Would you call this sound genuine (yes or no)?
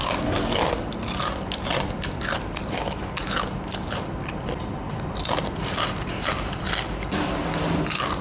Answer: yes